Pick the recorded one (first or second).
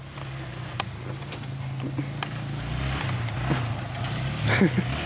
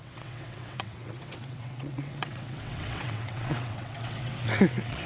first